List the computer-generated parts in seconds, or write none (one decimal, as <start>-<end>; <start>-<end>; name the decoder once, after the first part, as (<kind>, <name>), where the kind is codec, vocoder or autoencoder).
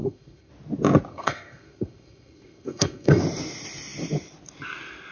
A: 0.0-0.5 (codec, SNAC); 1.1-3.2